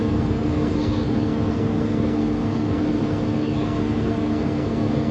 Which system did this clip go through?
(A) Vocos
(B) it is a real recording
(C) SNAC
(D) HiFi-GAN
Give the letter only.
C